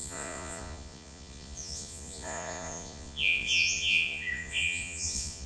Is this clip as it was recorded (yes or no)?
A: no